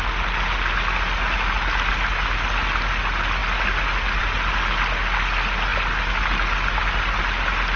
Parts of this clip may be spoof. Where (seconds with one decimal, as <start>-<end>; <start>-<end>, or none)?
none